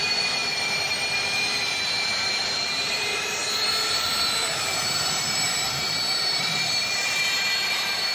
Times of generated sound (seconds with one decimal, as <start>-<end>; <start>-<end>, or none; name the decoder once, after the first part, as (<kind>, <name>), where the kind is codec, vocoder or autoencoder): 0.0-3.4 (vocoder, BigVGAN v2); 3.9-8.1